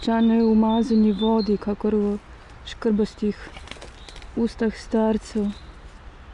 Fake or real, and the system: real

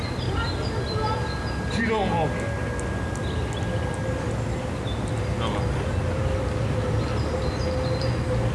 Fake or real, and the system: real